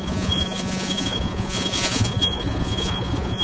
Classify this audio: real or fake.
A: fake